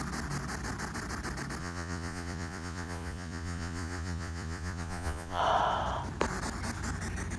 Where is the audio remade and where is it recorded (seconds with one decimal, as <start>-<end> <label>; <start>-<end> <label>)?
0.0-1.6 recorded; 1.6-5.4 remade; 5.4-7.4 recorded